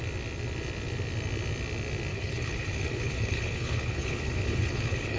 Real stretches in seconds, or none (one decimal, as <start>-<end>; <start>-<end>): 0.0-2.1